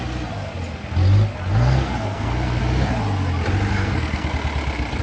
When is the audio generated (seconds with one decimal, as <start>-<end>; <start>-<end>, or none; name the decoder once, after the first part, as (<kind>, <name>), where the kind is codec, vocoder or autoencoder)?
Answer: 1.5-2.6 (codec, SNAC); 3.7-4.3